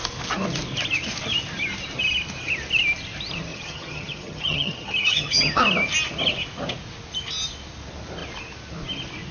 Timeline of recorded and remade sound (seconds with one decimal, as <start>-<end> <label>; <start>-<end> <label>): 0.0-3.5 recorded; 3.5-5.6 remade; 5.6-9.3 recorded

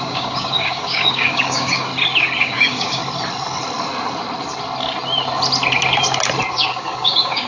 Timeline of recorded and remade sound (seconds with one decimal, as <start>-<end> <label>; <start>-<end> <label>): 0.0-1.9 remade; 1.9-2.4 recorded; 2.4-3.0 remade; 3.0-6.5 recorded; 6.5-7.5 remade

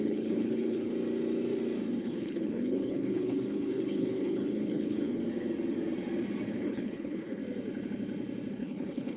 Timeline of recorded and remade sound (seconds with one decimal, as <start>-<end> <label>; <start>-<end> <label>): 0.0-0.9 remade; 0.9-2.0 recorded; 2.0-5.2 remade; 5.2-6.5 recorded; 6.5-7.4 remade; 7.4-8.5 recorded; 8.5-9.2 remade